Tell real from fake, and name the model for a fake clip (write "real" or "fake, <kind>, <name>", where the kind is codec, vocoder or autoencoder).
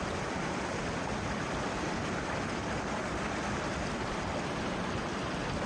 real